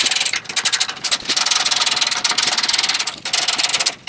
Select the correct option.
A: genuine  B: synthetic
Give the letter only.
A